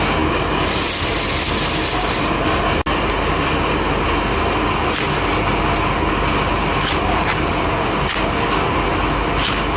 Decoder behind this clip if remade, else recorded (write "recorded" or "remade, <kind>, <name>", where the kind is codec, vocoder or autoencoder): recorded